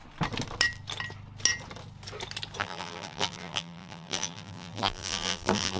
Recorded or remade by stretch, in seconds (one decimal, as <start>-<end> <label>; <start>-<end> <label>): 0.0-2.6 recorded; 2.6-5.8 remade